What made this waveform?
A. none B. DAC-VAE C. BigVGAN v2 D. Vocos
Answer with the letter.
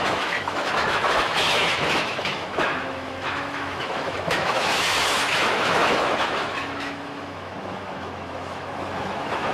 B